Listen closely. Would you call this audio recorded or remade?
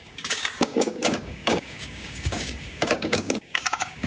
remade